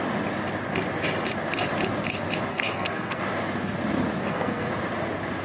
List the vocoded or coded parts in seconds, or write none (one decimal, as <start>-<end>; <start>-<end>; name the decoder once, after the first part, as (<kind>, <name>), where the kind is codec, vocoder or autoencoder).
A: 2.5-3.2 (codec, SNAC); 4.2-4.7